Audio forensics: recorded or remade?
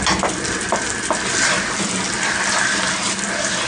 recorded